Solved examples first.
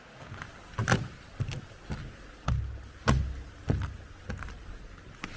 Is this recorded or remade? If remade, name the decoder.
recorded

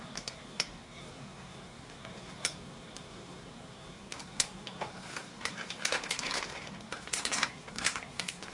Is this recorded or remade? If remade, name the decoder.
remade, codec, SNAC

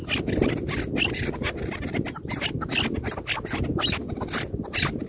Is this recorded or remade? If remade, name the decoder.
recorded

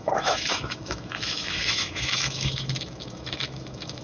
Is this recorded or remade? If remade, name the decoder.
remade, autoencoder, DAC-VAE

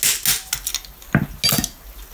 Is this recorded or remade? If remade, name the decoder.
recorded